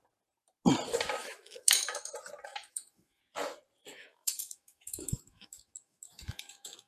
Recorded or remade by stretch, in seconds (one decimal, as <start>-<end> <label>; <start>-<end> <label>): 0.0-1.2 recorded; 1.2-2.1 remade; 2.1-2.5 recorded; 2.5-3.2 remade; 3.2-3.9 recorded; 3.9-6.9 remade